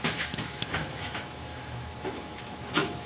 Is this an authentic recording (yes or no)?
no